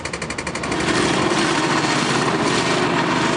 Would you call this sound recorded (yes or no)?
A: yes